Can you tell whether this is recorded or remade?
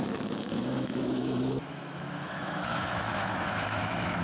remade